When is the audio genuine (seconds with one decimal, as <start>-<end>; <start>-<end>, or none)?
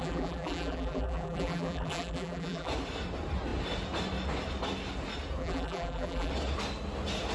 2.7-5.4; 6.3-7.3